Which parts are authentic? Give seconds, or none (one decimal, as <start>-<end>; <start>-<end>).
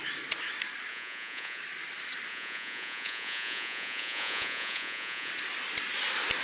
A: 0.0-0.9; 1.6-2.3; 5.3-6.4